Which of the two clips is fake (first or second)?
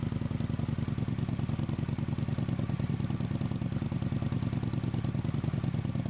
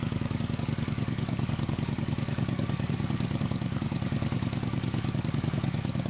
second